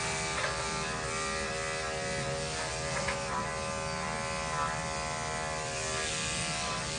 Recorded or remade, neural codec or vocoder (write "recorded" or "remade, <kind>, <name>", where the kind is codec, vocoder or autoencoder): recorded